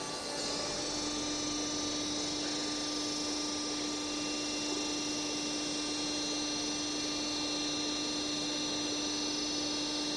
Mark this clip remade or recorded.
recorded